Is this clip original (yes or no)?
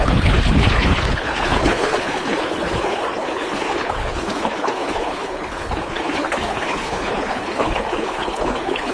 no